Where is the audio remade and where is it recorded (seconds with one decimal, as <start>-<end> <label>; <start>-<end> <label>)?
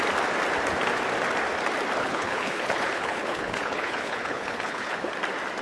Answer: 0.0-2.0 recorded; 2.0-5.1 remade; 5.1-5.6 recorded